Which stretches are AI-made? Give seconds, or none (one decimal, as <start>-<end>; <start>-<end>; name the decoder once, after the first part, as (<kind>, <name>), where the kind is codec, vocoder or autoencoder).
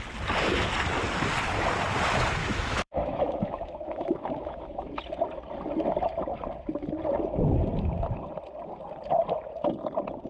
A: 2.4-4.9 (autoencoder, DAC-VAE)